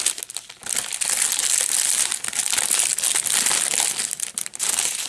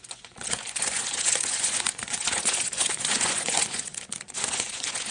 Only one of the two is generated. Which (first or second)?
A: second